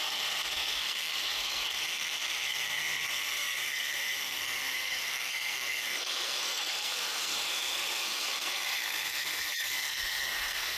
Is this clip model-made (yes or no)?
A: yes